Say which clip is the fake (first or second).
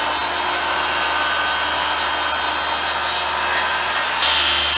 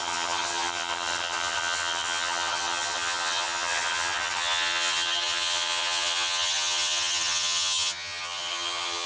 second